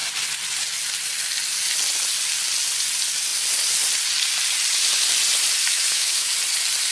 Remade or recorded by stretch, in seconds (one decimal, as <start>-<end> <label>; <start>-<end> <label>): 0.0-5.7 recorded; 5.7-6.3 remade; 6.3-6.9 recorded